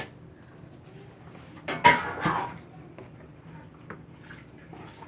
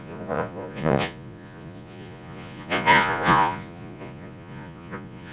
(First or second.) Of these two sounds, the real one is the first